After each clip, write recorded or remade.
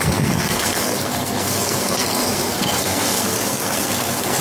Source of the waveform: remade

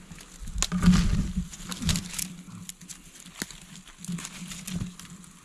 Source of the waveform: recorded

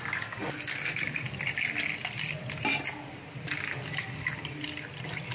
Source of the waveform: recorded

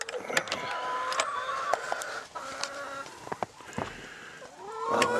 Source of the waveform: recorded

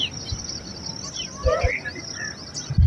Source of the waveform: recorded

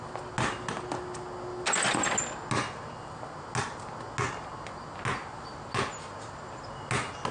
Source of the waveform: recorded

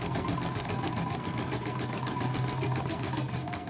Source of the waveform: remade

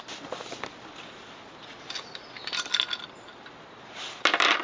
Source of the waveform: recorded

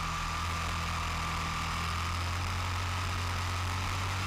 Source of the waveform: recorded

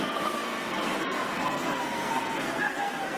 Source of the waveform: remade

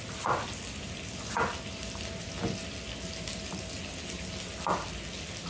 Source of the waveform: recorded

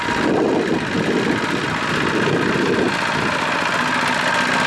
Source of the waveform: recorded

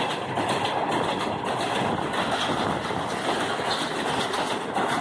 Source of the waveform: recorded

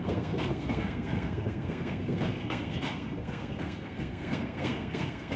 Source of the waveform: remade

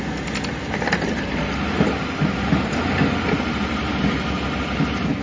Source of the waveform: recorded